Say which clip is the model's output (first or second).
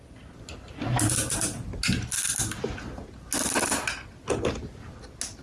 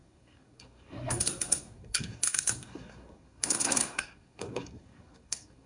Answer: second